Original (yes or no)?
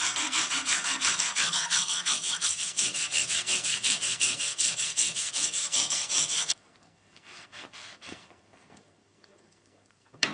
no